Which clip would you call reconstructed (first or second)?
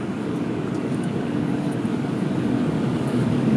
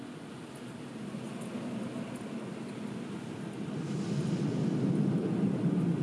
first